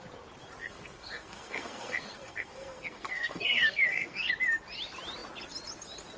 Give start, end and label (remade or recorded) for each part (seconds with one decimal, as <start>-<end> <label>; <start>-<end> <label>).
0.0-0.6 recorded; 0.6-4.3 remade; 4.3-6.2 recorded